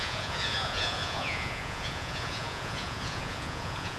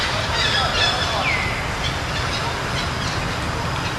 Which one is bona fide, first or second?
second